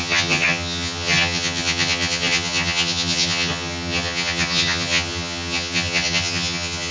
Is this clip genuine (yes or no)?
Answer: no